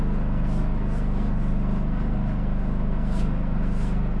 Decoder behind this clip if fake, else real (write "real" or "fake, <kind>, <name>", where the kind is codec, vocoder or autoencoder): fake, codec, SNAC